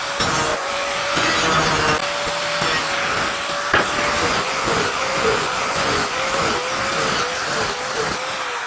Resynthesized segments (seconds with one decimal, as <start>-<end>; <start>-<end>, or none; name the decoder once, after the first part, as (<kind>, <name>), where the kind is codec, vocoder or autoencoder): 0.5-1.3 (vocoder, Vocos); 4.3-6.5